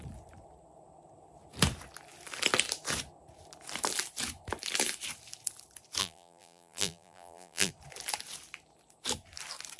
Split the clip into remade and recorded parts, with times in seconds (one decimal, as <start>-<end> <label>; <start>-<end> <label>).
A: 0.0-6.0 recorded; 6.0-7.7 remade; 7.7-9.8 recorded